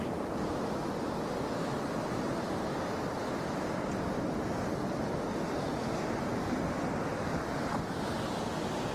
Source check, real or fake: real